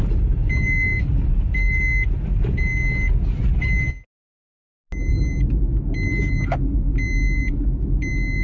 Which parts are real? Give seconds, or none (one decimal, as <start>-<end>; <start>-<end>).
0.0-1.1; 1.8-5.0; 5.6-8.4